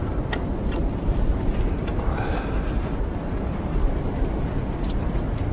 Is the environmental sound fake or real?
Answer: real